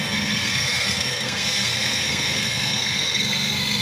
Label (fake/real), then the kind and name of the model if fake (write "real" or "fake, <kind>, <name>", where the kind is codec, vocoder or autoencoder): fake, codec, SNAC